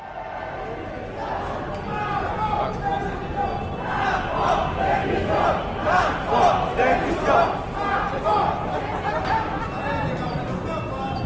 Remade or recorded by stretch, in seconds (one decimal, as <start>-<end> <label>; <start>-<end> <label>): 0.0-11.3 recorded